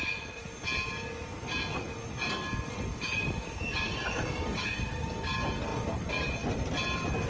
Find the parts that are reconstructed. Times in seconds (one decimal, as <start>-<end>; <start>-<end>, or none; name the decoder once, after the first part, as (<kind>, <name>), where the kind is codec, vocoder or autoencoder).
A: 2.9-5.3 (codec, DAC)